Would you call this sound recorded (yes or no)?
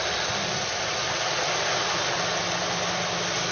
yes